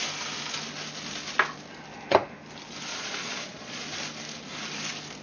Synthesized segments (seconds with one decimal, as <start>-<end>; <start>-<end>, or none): 2.9-3.8